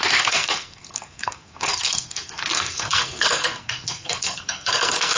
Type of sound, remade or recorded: remade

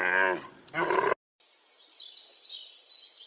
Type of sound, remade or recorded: recorded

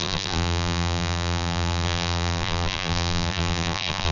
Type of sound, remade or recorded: remade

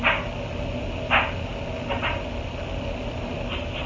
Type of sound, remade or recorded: recorded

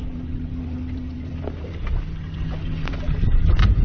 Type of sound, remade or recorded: recorded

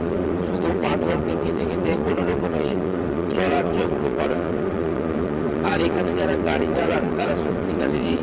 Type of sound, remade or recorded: remade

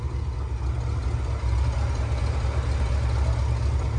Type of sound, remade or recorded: recorded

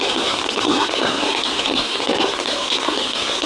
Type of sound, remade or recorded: remade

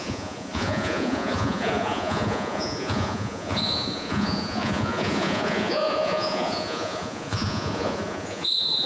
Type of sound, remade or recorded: remade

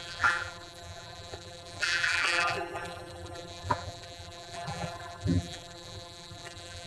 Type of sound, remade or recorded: remade